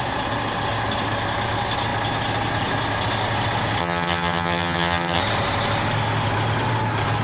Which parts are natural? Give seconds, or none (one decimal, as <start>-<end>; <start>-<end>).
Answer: 0.0-3.8; 5.2-7.2